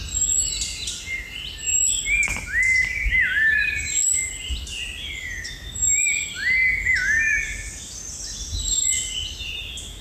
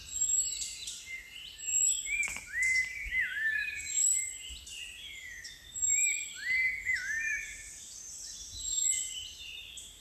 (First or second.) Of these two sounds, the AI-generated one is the second